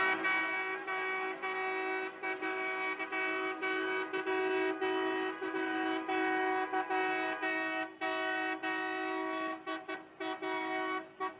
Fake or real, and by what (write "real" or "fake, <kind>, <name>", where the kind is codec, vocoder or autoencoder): real